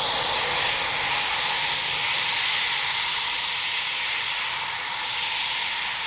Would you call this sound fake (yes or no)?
no